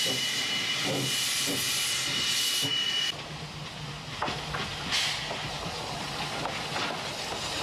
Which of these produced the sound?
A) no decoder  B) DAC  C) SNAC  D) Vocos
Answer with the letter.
A